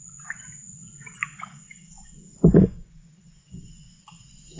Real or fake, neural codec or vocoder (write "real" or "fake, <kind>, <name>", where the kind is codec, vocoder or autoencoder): fake, vocoder, Vocos